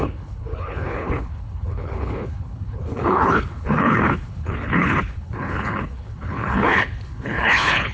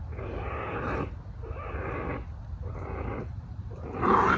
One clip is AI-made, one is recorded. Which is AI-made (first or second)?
first